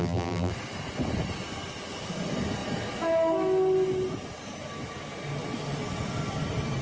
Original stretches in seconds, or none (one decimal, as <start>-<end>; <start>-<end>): 0.5-6.8